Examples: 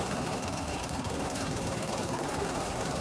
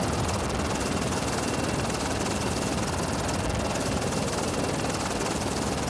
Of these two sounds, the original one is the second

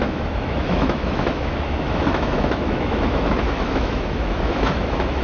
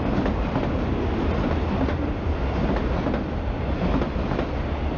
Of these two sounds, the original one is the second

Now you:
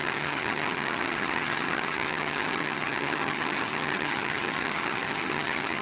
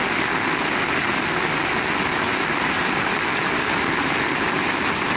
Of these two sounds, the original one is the second